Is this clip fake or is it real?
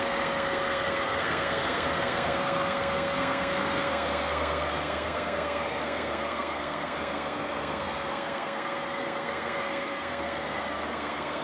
fake